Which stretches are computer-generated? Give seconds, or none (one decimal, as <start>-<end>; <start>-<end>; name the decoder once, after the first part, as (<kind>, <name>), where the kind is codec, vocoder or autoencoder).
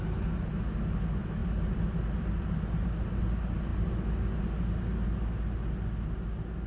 1.4-3.2 (vocoder, BigVGAN v2)